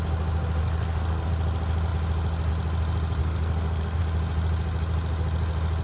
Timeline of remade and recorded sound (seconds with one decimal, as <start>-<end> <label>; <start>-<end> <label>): 0.0-0.6 recorded; 0.6-1.3 remade; 1.3-3.2 recorded; 3.2-4.0 remade; 4.0-5.8 recorded